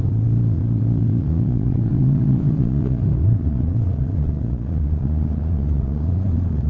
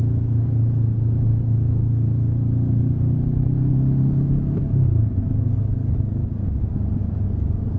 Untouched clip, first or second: second